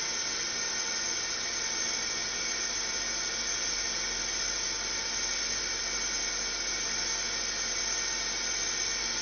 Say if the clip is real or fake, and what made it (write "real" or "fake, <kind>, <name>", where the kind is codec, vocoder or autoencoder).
real